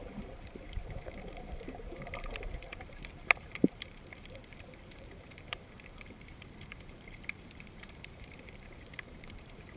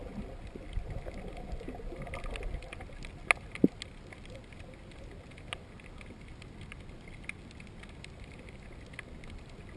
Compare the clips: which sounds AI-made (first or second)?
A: first